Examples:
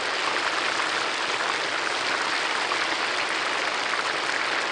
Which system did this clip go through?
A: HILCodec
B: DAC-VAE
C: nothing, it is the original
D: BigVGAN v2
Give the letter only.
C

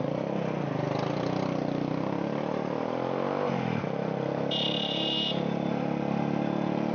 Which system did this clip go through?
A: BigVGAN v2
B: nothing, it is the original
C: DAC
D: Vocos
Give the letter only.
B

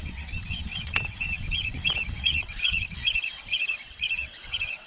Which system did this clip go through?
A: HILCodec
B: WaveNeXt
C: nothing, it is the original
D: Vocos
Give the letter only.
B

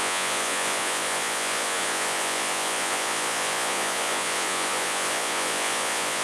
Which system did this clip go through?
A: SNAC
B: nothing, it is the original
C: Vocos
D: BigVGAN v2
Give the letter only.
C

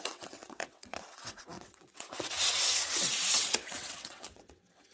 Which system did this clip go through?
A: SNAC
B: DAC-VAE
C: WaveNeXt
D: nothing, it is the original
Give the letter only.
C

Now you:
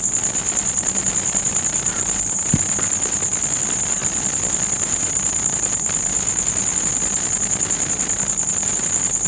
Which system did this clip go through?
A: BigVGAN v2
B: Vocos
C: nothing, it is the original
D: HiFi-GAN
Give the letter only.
C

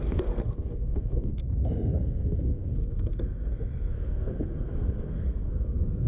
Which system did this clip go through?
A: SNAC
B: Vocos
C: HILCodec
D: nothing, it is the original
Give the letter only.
A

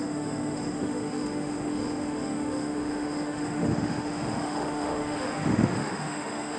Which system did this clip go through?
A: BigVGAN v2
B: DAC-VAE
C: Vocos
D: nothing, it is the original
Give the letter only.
B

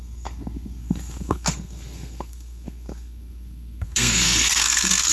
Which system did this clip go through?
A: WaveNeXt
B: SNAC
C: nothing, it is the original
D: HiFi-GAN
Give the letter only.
B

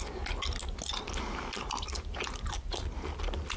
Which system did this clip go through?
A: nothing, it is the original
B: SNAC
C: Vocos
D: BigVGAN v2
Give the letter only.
A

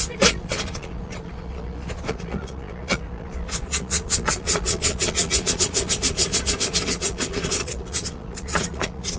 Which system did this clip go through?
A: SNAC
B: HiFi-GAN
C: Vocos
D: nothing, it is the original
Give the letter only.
C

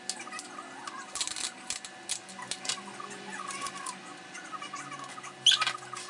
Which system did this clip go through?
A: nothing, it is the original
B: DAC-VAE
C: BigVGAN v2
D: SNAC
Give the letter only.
A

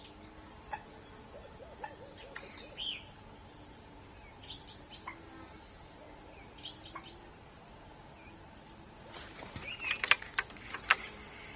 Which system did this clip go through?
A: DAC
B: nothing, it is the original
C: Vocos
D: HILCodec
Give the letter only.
B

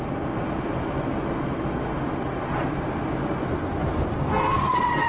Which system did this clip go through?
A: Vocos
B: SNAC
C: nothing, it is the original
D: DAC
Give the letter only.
C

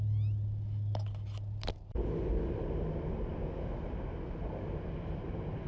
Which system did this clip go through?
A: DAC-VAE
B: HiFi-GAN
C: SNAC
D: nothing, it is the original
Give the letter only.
D